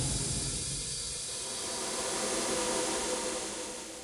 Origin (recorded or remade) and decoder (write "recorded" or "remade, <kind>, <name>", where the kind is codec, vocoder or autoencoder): recorded